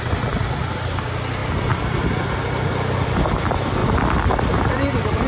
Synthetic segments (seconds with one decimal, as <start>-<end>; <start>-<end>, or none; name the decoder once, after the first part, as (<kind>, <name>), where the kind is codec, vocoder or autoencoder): none